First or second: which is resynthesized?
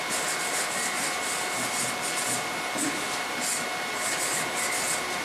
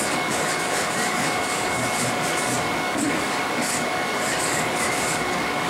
second